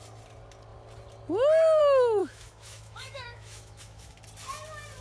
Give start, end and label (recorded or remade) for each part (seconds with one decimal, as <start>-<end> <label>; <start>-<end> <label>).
0.0-2.2 recorded; 2.2-4.2 remade; 4.2-5.0 recorded